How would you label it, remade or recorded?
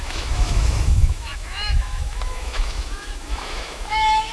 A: remade